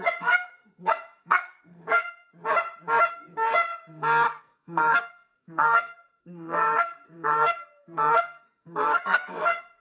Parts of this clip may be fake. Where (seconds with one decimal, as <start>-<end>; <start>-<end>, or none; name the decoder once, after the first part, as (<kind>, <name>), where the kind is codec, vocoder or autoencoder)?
0.0-2.3 (codec, SNAC); 3.1-3.7; 4.4-9.8